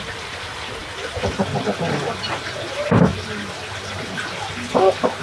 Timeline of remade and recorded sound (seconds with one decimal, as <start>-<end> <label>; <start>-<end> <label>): 0.0-5.2 recorded